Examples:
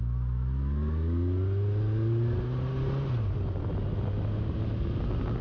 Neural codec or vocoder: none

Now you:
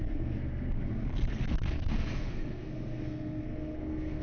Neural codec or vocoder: codec, SNAC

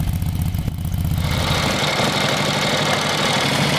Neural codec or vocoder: none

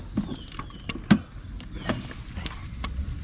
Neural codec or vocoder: none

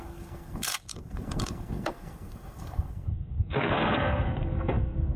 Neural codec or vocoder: codec, SNAC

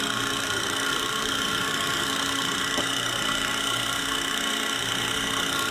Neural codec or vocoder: codec, SNAC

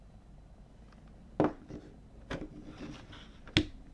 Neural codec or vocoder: none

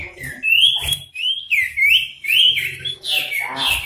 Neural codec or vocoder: none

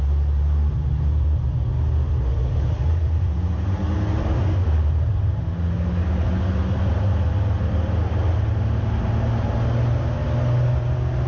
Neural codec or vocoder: none